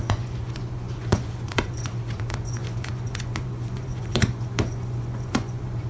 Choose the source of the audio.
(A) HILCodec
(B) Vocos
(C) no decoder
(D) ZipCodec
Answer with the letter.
B